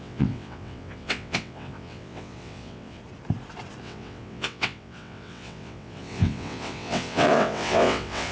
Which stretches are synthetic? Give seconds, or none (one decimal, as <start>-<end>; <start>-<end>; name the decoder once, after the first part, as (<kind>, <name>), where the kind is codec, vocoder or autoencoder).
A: 0.0-3.0 (vocoder, WaveNeXt); 3.8-8.3